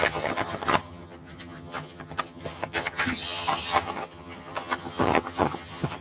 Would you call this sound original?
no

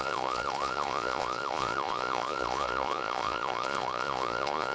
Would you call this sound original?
no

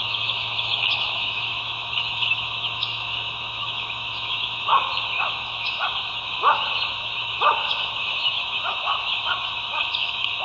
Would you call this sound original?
no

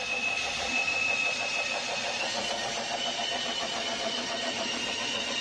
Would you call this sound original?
no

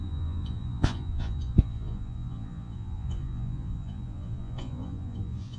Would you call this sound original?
no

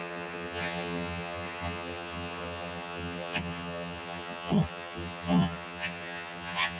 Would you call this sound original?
no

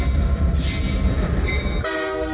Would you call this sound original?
yes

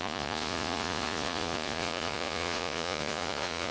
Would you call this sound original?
no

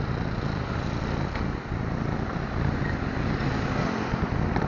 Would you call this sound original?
yes